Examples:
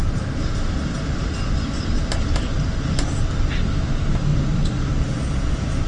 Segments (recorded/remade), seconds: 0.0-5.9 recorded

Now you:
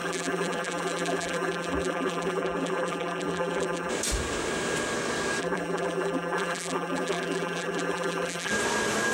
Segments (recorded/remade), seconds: 0.0-3.9 remade; 3.9-5.4 recorded; 5.4-8.5 remade; 8.5-9.1 recorded

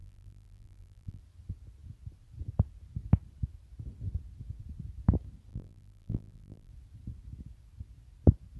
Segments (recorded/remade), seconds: 0.0-1.2 remade; 1.2-5.5 recorded; 5.5-6.7 remade; 6.7-8.6 recorded

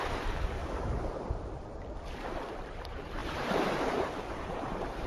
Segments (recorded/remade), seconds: 0.0-0.6 remade; 0.6-2.7 recorded; 2.7-5.1 remade

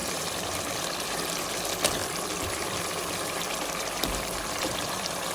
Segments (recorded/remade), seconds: 0.0-1.2 remade; 1.2-2.0 recorded; 2.0-5.3 remade